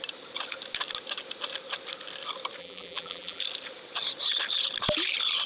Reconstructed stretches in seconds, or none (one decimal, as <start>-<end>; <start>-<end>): 2.6-3.4